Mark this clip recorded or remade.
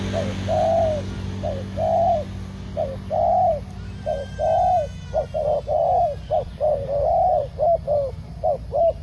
recorded